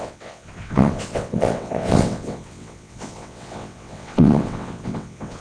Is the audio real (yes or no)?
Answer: no